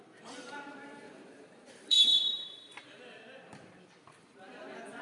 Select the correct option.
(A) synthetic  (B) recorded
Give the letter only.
A